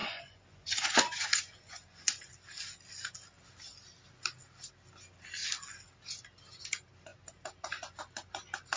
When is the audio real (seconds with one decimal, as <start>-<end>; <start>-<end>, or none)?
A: 2.3-8.8